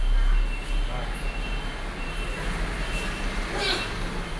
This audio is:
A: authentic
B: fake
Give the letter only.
A